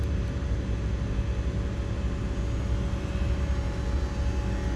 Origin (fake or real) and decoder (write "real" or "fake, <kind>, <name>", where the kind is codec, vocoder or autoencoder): real